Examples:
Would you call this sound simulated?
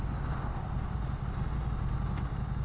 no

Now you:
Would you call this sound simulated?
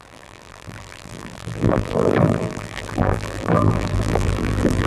yes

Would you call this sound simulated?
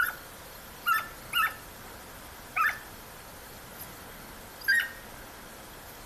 no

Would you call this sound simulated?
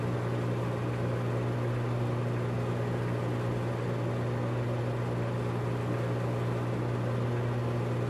no